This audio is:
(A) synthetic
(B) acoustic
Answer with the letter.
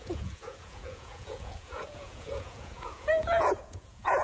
A